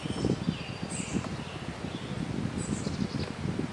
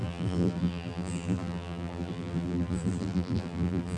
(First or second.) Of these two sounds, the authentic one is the first